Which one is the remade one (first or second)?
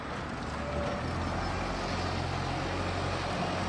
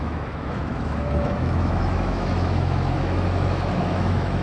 second